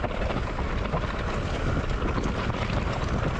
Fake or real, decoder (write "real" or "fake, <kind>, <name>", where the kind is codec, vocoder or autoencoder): real